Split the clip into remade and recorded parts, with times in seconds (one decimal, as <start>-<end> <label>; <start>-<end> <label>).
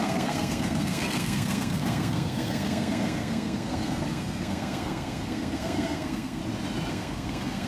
0.0-6.4 remade; 6.4-6.9 recorded; 6.9-7.7 remade